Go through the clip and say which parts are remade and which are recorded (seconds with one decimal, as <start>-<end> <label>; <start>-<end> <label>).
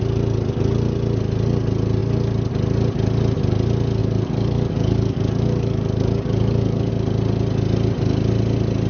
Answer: 0.0-4.0 recorded; 4.0-6.9 remade; 6.9-8.9 recorded